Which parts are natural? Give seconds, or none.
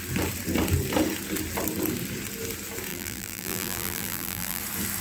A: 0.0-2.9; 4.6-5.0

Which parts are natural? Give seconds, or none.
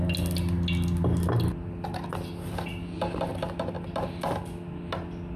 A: 0.0-5.4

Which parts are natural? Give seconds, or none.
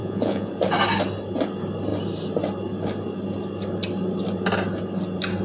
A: 0.5-5.4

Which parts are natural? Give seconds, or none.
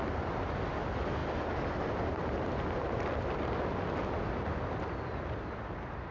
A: 0.0-6.1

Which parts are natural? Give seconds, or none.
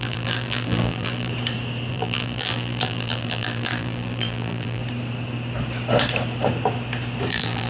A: 1.3-1.9; 4.8-7.3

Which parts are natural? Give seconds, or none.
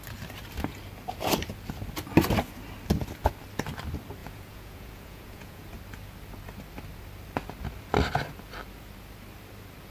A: 0.0-4.2; 5.6-9.9